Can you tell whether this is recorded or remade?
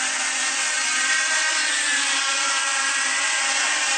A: remade